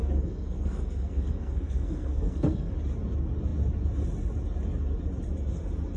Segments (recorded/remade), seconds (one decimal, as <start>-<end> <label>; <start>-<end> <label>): 0.0-2.7 remade; 2.7-6.0 recorded